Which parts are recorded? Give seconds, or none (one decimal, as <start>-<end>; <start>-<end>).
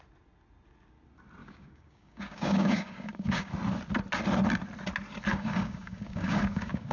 0.0-1.4; 3.5-5.3